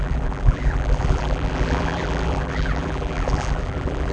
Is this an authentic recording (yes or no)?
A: no